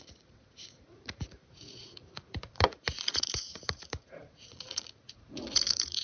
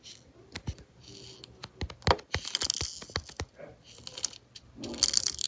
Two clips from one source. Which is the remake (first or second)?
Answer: first